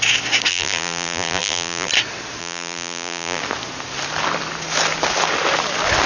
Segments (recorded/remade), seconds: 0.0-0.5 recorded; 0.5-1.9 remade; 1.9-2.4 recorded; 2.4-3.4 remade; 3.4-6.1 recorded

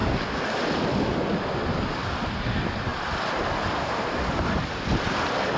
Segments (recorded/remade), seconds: 0.0-5.6 recorded

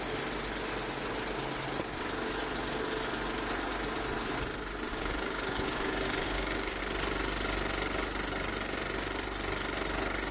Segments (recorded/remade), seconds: 0.0-4.9 recorded; 4.9-6.8 remade; 6.8-10.3 recorded

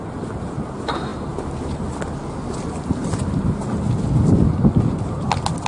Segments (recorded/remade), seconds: 0.0-5.7 recorded

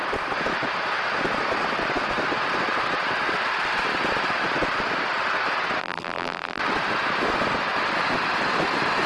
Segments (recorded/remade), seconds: 0.0-5.8 recorded; 5.8-6.6 remade; 6.6-9.1 recorded

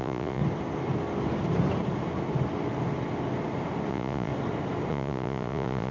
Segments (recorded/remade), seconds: 0.0-0.4 remade; 0.4-3.9 recorded; 3.9-4.3 remade; 4.3-4.9 recorded; 4.9-5.9 remade

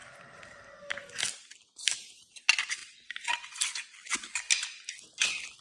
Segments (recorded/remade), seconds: 0.0-5.6 recorded

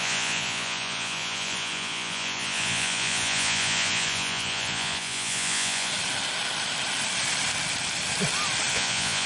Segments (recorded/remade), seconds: 0.0-5.9 remade; 5.9-8.7 recorded; 8.7-9.3 remade